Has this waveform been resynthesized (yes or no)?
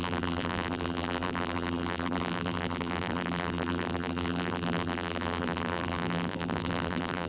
yes